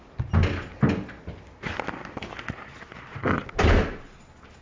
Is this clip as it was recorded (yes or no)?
yes